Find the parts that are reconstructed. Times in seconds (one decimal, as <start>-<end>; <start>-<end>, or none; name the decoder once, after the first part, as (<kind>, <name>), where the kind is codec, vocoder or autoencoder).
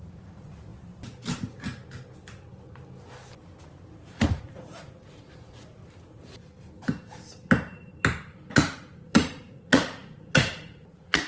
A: 0.0-0.7 (vocoder, Vocos); 4.1-5.8; 8.5-11.3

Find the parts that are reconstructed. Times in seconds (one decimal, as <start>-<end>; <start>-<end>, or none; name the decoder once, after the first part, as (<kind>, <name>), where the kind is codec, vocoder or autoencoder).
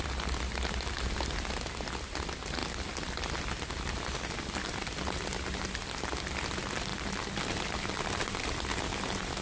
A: none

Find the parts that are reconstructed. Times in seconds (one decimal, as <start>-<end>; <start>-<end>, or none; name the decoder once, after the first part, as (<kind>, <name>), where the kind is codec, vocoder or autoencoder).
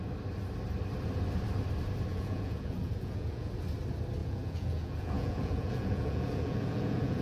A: 2.1-3.5 (vocoder, Vocos); 4.2-7.2